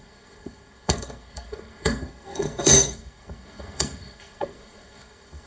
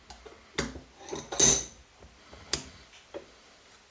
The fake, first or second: first